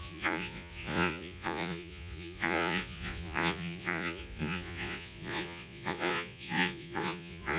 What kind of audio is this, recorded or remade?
remade